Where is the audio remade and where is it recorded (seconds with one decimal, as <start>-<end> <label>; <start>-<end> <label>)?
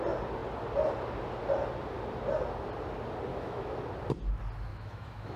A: 0.0-3.3 recorded; 3.3-3.8 remade; 3.8-4.7 recorded; 4.7-5.4 remade